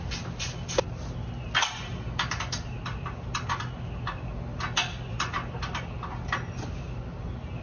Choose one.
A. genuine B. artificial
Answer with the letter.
A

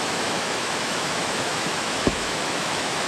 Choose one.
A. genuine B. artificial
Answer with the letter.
B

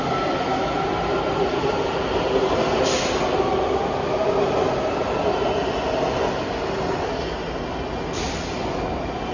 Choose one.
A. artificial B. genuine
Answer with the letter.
B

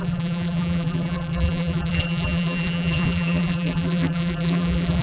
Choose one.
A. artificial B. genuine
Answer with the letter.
A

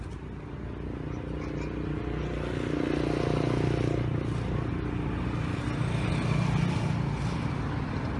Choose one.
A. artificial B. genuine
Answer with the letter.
B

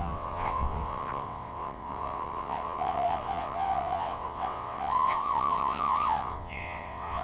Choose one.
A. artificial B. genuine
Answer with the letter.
A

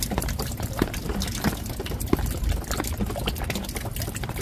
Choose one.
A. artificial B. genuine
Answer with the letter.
B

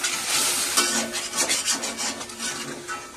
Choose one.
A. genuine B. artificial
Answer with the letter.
A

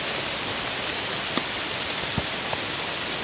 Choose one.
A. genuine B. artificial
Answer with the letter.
A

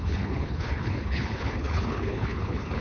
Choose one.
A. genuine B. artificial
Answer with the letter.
B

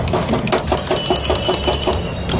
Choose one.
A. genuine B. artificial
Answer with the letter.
A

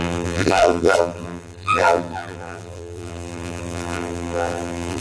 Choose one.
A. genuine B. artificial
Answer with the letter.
B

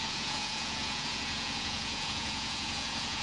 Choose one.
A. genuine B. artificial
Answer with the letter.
B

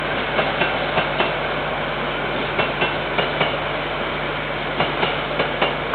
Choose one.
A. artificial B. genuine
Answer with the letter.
B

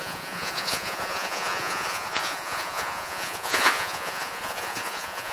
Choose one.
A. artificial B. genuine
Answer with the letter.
A